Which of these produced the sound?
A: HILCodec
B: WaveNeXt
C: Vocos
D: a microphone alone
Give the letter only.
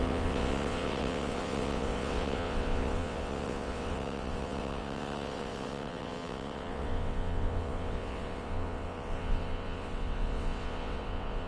B